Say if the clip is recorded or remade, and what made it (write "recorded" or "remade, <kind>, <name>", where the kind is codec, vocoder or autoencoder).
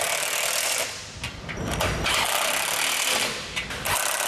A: recorded